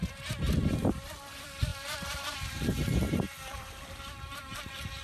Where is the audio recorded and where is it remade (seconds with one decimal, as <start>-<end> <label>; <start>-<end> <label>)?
0.0-5.0 remade